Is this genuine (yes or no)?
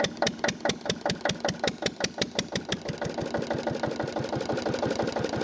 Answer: yes